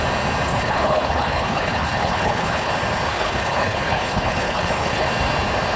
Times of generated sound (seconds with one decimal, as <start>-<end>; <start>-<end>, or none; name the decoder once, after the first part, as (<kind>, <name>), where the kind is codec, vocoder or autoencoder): 0.5-2.7 (codec, HILCodec); 3.1-5.1